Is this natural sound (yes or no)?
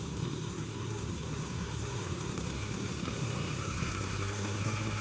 no